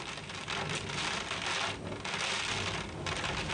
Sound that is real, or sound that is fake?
real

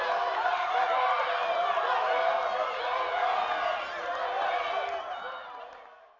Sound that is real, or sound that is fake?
real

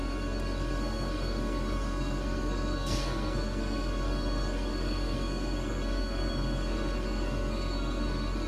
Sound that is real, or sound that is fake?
fake